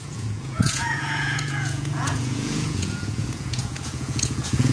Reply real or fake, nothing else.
fake